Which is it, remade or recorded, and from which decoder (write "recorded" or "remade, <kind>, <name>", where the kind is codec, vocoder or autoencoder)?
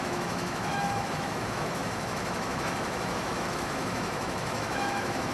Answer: remade, autoencoder, DAC-VAE